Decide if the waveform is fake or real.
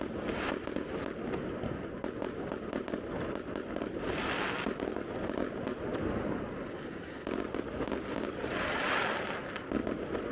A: real